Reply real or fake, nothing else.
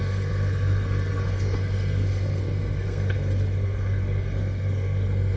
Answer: fake